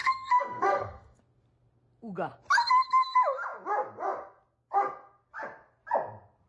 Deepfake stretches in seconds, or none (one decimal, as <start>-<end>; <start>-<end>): 0.0-1.2